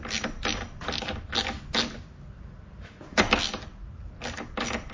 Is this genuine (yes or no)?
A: yes